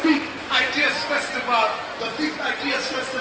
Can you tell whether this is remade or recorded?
recorded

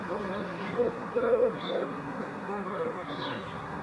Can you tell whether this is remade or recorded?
remade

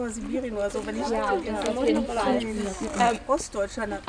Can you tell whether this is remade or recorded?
recorded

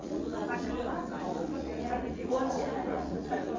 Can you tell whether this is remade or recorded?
remade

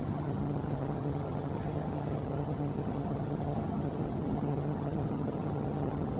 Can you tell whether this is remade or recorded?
remade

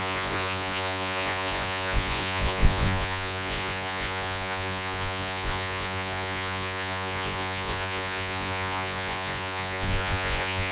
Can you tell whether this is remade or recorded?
remade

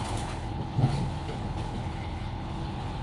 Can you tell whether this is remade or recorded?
remade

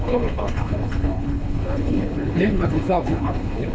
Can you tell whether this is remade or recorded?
remade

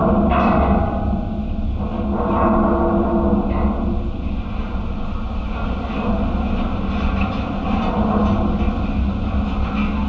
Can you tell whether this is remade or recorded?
recorded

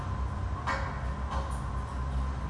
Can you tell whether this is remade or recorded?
recorded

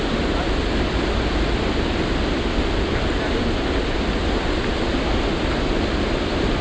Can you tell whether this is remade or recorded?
recorded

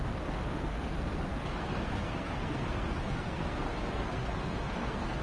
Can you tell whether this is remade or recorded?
remade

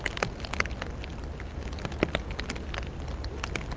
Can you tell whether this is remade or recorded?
recorded